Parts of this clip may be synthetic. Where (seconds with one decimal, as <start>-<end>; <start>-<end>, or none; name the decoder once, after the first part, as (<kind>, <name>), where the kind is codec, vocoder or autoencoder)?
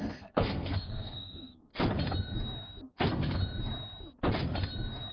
0.0-1.7 (codec, SNAC); 2.8-3.4